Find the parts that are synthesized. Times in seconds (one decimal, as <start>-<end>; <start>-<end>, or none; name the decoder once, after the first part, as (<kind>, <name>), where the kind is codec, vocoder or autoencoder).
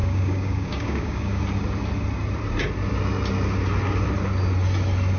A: 0.0-1.4 (codec, DAC)